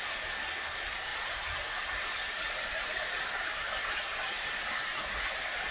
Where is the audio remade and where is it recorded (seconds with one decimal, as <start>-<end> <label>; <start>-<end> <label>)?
0.0-1.1 recorded; 1.1-4.5 remade; 4.5-5.7 recorded